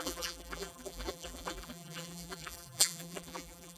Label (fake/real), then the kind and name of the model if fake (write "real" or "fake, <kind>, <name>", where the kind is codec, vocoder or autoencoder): fake, vocoder, BigVGAN v2